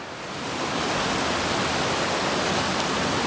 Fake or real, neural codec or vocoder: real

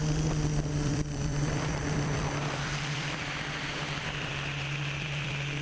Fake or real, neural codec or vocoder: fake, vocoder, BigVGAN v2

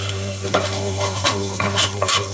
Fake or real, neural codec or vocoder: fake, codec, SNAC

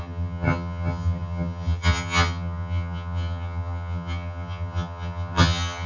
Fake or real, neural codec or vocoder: fake, vocoder, HiFi-GAN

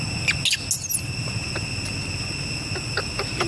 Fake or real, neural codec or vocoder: real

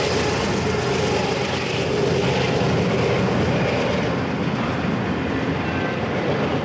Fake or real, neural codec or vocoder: real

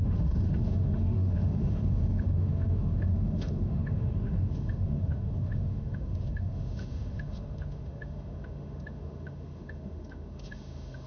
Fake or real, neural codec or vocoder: fake, autoencoder, DAC-VAE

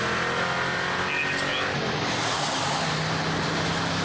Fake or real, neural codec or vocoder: real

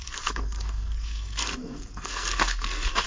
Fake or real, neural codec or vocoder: fake, codec, SNAC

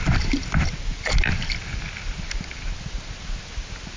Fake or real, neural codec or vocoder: real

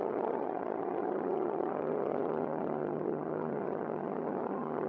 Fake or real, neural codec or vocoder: fake, vocoder, HiFi-GAN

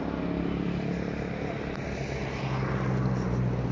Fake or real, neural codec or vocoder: real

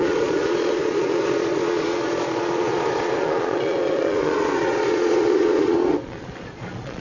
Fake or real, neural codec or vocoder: fake, vocoder, Vocos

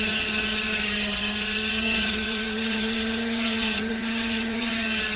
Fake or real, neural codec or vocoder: fake, vocoder, HiFi-GAN